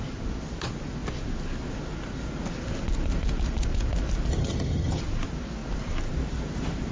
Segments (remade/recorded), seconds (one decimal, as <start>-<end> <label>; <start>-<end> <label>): 0.0-4.3 recorded; 4.3-5.0 remade; 5.0-6.9 recorded